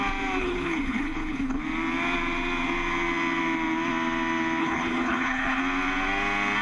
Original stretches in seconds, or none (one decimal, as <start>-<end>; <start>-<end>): 0.0-0.4; 1.6-4.6; 5.6-6.6